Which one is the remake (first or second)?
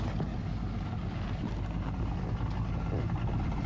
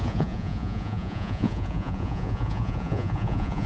second